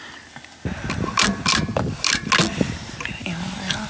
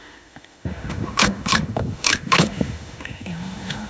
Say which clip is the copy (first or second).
second